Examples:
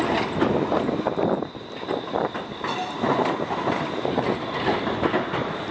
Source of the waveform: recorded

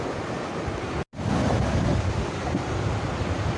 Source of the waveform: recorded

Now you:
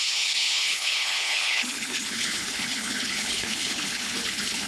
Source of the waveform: remade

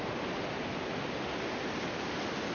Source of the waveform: recorded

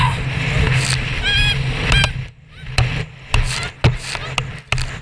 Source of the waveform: recorded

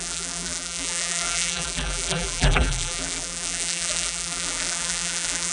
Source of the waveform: remade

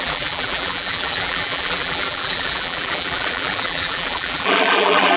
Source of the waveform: remade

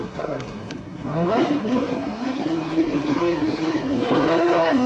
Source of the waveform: remade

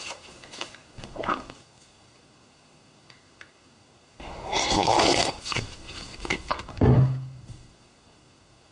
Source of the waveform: remade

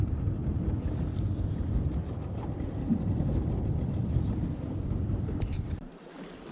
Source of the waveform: recorded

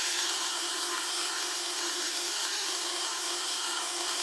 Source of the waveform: remade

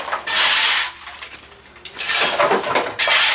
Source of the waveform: recorded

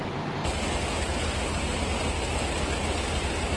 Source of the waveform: recorded